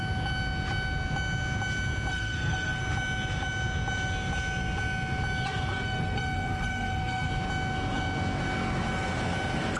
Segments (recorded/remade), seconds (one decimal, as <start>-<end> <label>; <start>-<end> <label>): 0.0-2.1 recorded; 2.1-2.8 remade; 2.8-5.7 recorded; 5.7-7.3 remade; 7.3-9.8 recorded